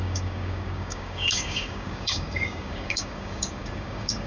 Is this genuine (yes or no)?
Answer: no